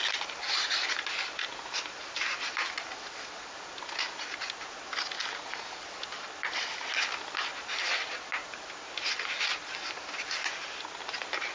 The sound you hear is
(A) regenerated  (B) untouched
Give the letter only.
B